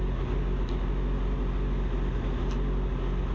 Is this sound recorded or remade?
recorded